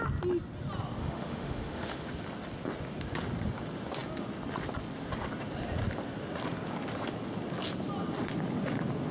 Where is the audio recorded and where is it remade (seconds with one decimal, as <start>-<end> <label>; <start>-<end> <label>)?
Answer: 0.0-1.0 recorded; 1.0-2.1 remade; 2.1-9.1 recorded